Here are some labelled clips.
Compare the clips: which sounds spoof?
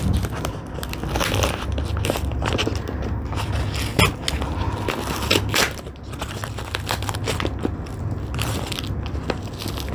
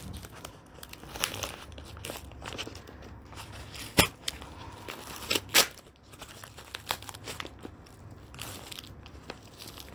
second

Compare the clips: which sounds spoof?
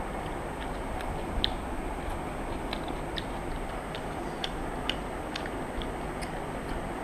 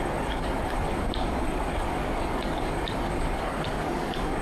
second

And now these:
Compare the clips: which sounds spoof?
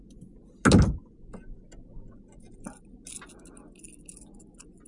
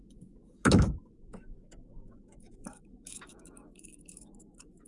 second